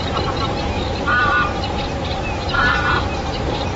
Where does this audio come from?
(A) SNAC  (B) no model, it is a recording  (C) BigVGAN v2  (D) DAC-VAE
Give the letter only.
B